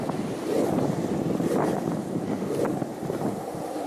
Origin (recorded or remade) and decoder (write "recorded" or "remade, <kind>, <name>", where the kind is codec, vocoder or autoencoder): recorded